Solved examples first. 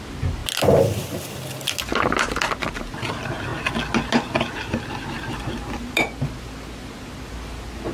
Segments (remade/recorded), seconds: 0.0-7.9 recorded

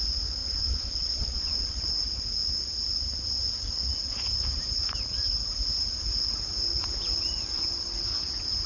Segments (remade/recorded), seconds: 0.0-0.4 recorded; 0.4-1.7 remade; 1.7-8.7 recorded

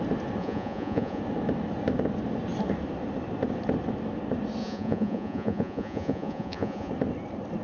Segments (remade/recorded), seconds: 0.0-0.4 recorded; 0.4-1.2 remade; 1.2-4.6 recorded; 4.6-6.9 remade; 6.9-7.6 recorded

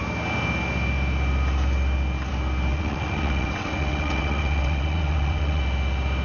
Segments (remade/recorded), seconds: 0.0-2.7 recorded; 2.7-5.6 remade; 5.6-6.2 recorded